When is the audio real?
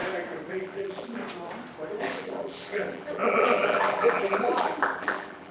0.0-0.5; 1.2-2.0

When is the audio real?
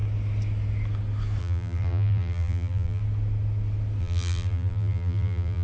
0.0-1.4; 3.0-4.0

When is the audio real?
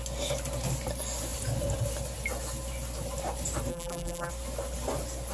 0.0-3.7; 4.3-5.3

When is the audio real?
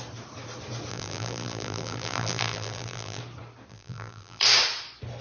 0.0-0.9; 3.2-3.7; 4.4-5.2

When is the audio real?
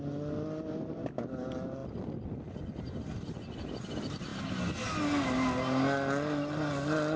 0.0-7.2